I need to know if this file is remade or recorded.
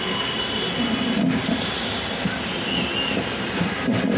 recorded